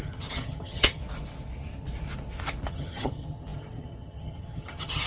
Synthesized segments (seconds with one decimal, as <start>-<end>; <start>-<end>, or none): 0.0-1.0; 2.7-5.1